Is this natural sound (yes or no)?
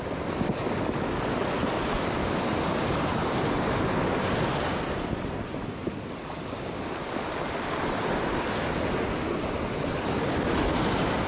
yes